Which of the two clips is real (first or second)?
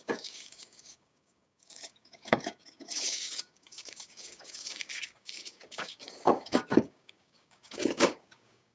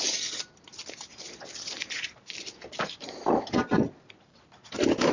second